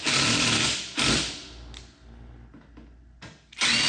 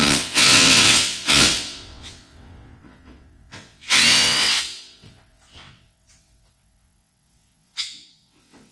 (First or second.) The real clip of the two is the first